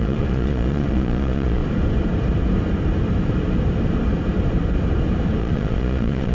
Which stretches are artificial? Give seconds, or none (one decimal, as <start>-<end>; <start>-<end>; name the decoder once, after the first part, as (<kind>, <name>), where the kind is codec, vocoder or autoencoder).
0.0-1.6 (vocoder, Vocos); 5.4-6.3